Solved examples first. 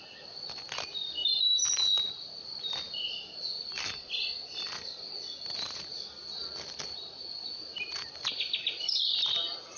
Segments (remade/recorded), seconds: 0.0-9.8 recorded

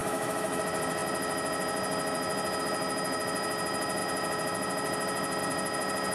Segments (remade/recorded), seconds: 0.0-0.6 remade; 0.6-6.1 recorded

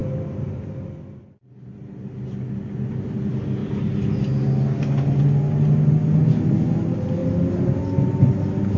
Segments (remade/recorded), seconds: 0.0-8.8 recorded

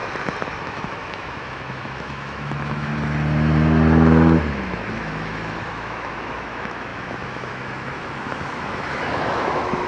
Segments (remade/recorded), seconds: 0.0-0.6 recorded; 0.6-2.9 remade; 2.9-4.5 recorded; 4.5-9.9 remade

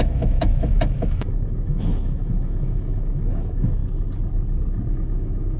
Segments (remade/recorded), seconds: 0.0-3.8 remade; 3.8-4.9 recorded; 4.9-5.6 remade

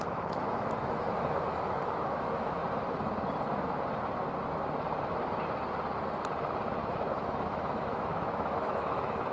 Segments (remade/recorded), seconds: 0.0-2.6 remade; 2.6-7.1 recorded; 7.1-9.3 remade

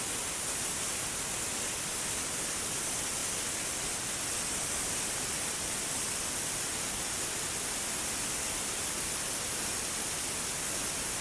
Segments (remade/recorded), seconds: 0.0-11.2 recorded

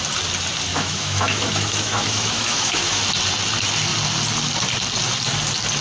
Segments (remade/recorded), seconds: 0.0-0.7 recorded; 0.7-3.0 remade; 3.0-5.8 recorded